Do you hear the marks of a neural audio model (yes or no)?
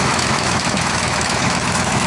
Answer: yes